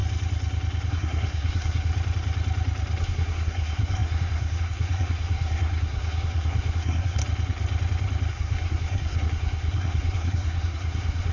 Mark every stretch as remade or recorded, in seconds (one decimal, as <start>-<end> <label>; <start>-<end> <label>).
0.0-0.9 recorded; 0.9-1.9 remade; 1.9-3.0 recorded; 3.0-7.2 remade; 7.2-8.3 recorded; 8.3-11.3 remade